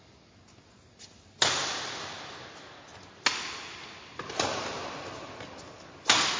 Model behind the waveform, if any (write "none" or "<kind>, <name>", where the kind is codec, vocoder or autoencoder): none